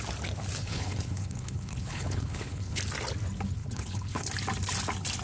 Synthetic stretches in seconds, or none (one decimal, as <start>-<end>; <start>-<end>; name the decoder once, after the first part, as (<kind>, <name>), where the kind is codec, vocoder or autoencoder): 0.6-2.8 (codec, HILCodec); 3.6-4.3